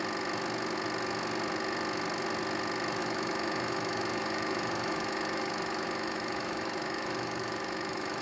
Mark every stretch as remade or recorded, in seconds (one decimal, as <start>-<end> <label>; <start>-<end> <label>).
0.0-3.0 recorded; 3.0-8.2 remade